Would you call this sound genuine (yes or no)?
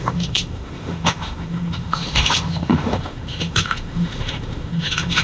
no